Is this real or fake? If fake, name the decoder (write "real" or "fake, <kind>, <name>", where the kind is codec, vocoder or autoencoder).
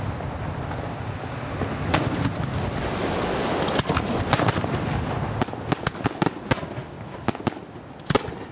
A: real